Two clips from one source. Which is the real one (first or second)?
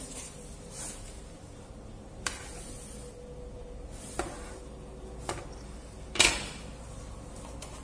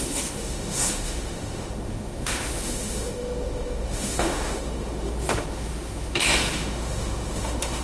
first